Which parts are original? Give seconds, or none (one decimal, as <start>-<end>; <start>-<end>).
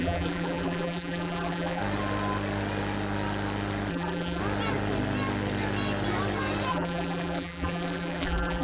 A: 1.8-3.9; 4.4-6.7